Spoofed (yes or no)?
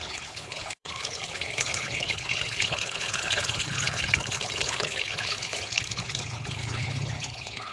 yes